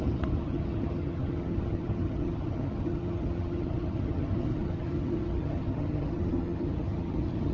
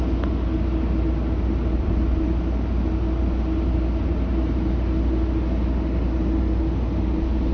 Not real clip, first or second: first